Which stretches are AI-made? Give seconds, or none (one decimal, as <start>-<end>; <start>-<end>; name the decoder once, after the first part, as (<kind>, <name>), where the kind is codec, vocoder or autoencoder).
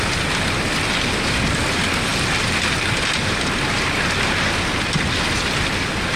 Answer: none